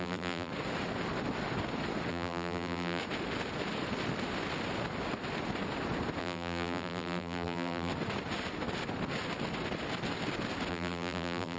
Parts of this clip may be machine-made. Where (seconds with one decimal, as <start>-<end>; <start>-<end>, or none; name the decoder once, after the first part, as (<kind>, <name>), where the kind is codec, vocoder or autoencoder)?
0.0-0.5 (vocoder, BigVGAN v2); 2.1-3.0; 6.2-7.9; 10.7-11.6